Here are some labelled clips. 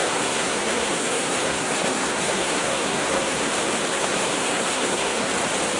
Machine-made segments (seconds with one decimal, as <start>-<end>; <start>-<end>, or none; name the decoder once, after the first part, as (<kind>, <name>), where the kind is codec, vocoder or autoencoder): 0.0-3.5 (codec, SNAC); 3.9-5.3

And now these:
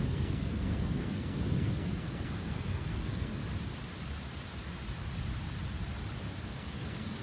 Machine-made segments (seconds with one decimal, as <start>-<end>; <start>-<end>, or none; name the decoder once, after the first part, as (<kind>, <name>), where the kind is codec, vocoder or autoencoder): 0.0-3.4 (codec, SNAC); 6.4-7.2

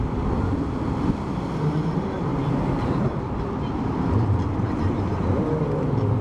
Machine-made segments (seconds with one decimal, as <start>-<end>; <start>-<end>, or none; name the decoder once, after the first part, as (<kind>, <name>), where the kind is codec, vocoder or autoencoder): none

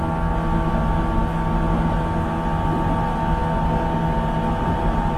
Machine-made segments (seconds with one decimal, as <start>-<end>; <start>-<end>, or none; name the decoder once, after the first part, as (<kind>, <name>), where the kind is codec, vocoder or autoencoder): none

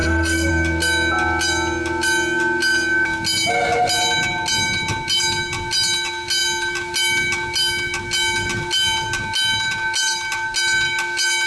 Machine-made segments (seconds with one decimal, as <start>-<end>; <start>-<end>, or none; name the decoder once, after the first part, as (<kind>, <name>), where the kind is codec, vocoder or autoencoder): 0.0-0.5 (codec, SNAC)